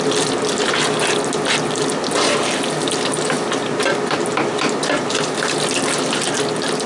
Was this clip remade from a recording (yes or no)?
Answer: no